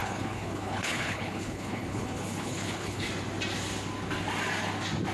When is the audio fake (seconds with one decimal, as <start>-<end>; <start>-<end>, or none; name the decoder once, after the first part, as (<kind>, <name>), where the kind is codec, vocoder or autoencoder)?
0.0-3.1 (codec, HILCodec)